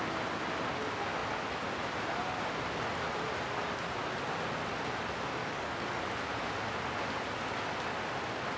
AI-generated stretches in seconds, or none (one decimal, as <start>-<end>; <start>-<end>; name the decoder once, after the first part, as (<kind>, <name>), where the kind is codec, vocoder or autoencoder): 5.4-6.0 (codec, DAC)